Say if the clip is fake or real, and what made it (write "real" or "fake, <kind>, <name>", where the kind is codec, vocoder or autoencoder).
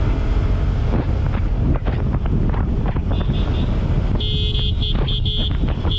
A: real